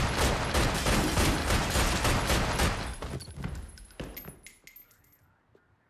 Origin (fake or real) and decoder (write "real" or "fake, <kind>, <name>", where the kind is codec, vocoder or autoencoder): real